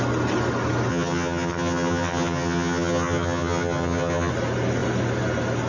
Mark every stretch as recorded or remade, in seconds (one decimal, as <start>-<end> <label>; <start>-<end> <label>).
0.0-0.9 recorded; 0.9-4.3 remade; 4.3-5.7 recorded